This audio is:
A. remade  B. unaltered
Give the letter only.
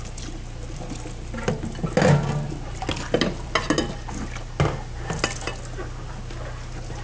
B